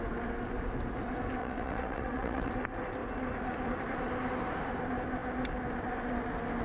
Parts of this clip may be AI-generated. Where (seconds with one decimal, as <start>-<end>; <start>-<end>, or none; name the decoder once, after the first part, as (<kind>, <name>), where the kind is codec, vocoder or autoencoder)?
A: 1.4-2.5 (vocoder, WaveNeXt)

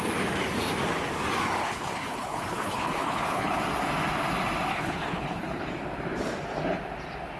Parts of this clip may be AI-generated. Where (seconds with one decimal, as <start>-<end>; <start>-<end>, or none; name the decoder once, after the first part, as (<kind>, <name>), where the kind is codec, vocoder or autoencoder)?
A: 1.6-3.6 (codec, HILCodec); 4.7-5.6

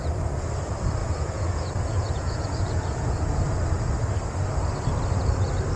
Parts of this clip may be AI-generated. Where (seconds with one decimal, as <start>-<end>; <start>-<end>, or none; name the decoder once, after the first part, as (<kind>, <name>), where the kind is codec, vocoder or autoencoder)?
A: 1.0-3.4 (vocoder, Vocos)

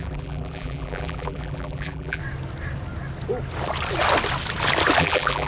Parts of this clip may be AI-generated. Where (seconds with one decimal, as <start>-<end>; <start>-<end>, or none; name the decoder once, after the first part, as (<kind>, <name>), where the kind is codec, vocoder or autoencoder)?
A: 0.0-2.2 (vocoder, BigVGAN v2); 5.0-5.5

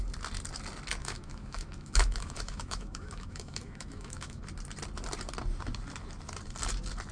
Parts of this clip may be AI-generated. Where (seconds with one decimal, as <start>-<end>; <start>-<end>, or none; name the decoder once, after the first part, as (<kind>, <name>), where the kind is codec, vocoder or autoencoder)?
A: 1.0-4.4 (autoencoder, DAC-VAE)

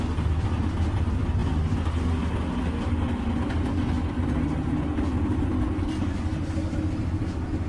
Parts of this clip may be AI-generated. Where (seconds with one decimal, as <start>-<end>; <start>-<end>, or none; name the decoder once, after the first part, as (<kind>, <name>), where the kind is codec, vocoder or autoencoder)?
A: none

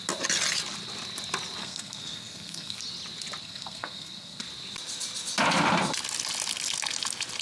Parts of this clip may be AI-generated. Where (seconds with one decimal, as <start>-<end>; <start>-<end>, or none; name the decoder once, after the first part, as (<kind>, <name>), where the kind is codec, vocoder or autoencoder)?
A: 1.6-2.8 (codec, SNAC); 3.4-4.4

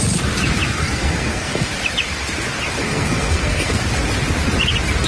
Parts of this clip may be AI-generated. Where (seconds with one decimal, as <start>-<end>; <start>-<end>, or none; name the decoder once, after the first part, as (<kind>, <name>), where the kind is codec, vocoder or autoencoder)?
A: 0.8-1.7 (codec, SNAC); 2.7-3.8